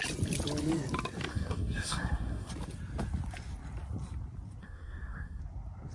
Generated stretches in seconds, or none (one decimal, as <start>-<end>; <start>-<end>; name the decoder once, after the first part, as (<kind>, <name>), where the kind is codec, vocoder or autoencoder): 1.3-2.5 (codec, SNAC); 4.6-5.4